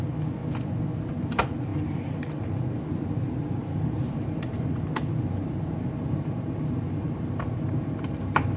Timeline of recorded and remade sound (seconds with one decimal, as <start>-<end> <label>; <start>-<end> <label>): 0.0-0.4 remade; 0.4-1.1 recorded; 1.1-8.6 remade